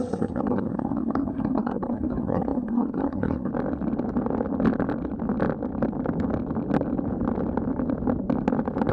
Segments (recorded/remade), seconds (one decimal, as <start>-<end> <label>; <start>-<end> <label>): 0.0-3.5 remade; 3.5-8.9 recorded